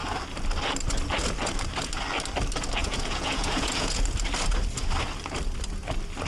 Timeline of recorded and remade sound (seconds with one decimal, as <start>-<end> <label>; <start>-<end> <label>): 0.0-2.8 recorded; 2.8-4.0 remade; 4.0-6.3 recorded

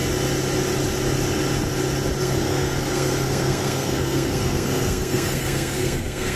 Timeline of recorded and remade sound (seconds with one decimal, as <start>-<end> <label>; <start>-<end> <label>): 0.0-2.2 recorded; 2.2-6.4 remade

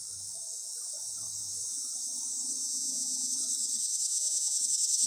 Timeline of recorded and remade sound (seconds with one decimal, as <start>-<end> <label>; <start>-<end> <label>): 0.0-2.6 remade; 2.6-3.3 recorded; 3.3-4.1 remade; 4.1-4.6 recorded; 4.6-5.1 remade

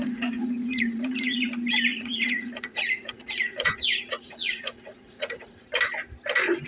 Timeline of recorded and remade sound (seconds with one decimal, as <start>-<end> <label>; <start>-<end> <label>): 0.0-1.5 remade; 1.5-1.9 recorded; 1.9-5.7 remade; 5.7-6.7 recorded

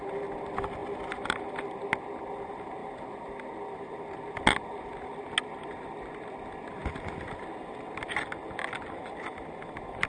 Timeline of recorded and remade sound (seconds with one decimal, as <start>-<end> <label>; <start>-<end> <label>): 0.0-2.8 recorded; 2.8-3.4 remade; 3.4-10.1 recorded

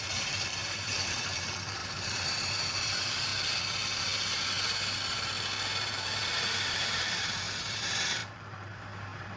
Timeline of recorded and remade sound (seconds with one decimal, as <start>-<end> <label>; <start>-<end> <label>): 0.0-3.3 remade; 3.3-6.7 recorded; 6.7-9.4 remade